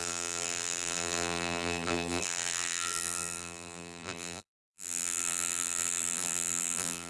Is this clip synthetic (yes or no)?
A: yes